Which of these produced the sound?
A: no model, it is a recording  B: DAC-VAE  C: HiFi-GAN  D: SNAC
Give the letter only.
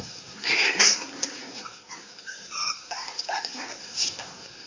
D